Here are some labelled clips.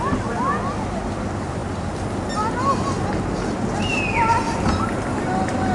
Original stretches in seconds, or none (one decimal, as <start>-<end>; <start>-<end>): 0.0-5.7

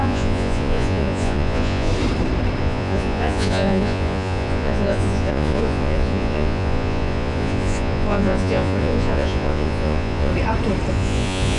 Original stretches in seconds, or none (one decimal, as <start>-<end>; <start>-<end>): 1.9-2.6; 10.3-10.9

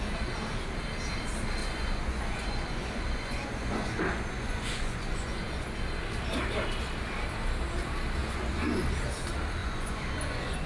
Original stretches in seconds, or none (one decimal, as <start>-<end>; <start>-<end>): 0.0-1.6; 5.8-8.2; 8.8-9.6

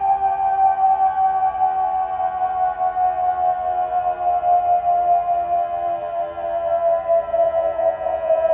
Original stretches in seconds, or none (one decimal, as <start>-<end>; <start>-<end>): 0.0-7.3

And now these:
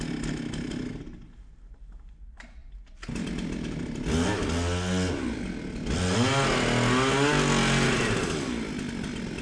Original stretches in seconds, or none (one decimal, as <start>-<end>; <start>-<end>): 0.0-9.4

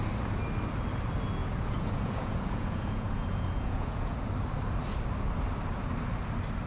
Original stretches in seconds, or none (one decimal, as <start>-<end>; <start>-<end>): 0.0-1.4; 4.2-6.7